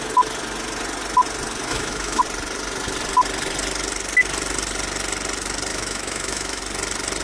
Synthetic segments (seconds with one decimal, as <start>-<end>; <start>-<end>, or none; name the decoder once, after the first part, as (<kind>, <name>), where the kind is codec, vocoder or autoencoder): 1.7-2.2 (autoencoder, DAC-VAE); 5.7-6.6